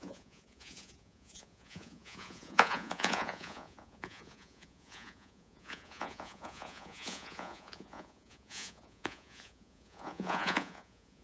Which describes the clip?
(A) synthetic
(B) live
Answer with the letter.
A